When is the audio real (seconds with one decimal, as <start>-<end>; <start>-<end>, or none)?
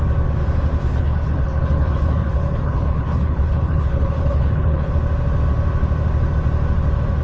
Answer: 0.0-0.8; 4.9-7.2